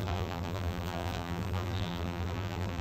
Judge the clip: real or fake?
fake